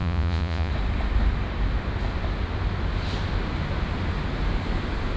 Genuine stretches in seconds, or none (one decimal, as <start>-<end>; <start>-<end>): 0.7-5.2

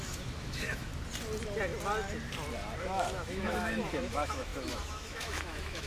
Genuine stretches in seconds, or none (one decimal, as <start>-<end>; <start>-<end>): 0.9-2.8

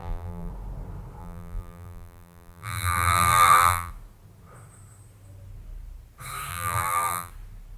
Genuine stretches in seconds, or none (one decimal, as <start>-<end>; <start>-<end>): 0.5-1.2; 3.9-6.5; 7.3-7.8

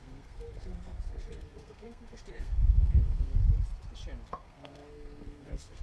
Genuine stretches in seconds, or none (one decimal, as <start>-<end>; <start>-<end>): 3.3-4.3

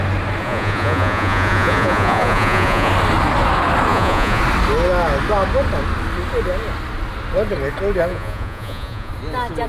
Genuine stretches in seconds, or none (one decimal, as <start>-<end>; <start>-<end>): 0.0-0.4; 2.9-3.9; 4.4-8.1; 9.1-9.7

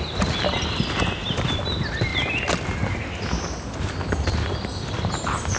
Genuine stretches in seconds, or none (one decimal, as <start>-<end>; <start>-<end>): 0.0-5.6